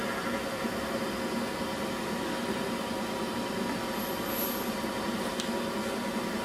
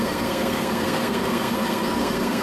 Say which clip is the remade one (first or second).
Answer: second